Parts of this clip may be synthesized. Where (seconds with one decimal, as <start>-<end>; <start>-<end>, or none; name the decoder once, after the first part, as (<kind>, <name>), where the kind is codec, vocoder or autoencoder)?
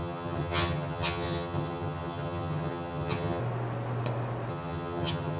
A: 0.0-3.4 (vocoder, HiFi-GAN); 4.5-5.4